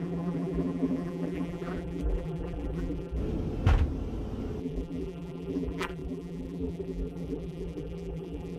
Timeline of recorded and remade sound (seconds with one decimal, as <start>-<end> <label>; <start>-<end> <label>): 0.0-3.2 remade; 3.2-4.6 recorded; 4.6-8.6 remade